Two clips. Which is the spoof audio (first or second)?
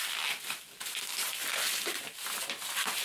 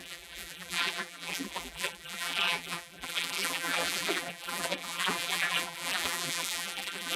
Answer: second